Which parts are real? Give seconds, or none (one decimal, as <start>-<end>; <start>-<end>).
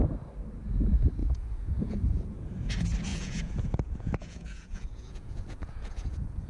0.0-1.2; 2.5-3.1